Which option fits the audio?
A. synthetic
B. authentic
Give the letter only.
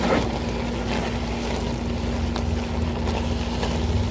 B